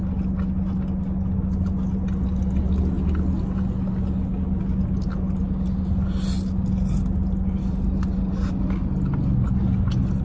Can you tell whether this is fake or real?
real